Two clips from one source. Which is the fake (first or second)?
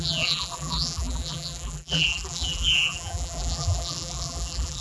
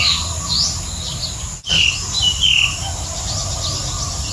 first